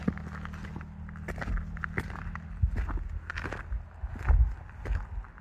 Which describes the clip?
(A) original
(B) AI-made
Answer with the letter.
A